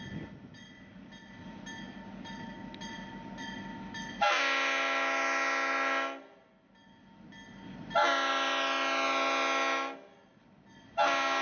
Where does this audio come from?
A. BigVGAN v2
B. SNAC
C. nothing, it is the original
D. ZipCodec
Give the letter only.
C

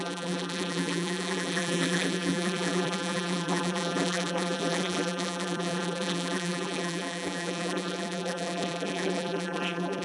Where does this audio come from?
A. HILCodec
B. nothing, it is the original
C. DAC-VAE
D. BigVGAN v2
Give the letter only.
D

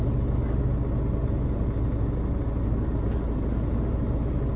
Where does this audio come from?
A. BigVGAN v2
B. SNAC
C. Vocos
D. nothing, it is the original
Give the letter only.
D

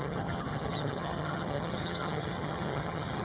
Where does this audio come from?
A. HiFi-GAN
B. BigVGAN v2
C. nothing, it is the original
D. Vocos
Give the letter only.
A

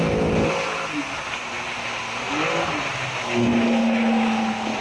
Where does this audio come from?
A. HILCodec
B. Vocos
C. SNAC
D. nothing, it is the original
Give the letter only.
D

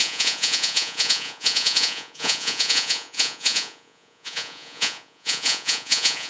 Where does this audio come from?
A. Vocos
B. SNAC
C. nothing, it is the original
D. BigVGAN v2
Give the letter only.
A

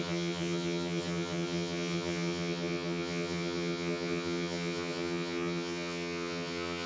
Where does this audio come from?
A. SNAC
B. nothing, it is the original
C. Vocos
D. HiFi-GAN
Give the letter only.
D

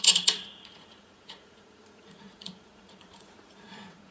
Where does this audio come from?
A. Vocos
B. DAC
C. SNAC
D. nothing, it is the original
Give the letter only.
A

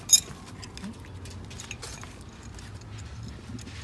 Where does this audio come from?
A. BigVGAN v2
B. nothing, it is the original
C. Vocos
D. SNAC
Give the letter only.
B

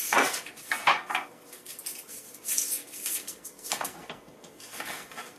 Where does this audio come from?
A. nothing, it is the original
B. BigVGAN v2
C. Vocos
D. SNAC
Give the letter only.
D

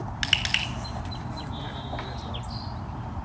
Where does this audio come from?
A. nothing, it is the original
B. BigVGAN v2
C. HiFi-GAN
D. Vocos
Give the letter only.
A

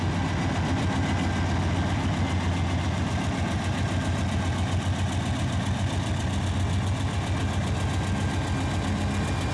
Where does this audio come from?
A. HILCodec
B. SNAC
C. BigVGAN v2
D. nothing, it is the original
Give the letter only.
D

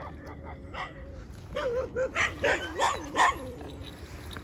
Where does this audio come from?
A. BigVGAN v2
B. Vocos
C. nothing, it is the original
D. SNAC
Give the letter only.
C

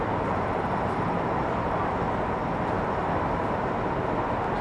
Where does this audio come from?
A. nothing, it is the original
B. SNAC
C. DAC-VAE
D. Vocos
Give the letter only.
A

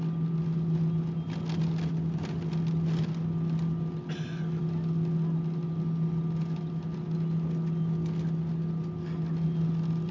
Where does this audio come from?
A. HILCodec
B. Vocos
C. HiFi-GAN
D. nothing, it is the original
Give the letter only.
D